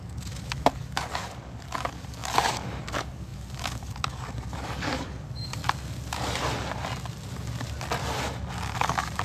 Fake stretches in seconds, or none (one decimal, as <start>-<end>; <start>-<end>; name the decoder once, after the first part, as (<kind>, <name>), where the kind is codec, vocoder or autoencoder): 0.0-5.6 (codec, DAC); 8.5-9.2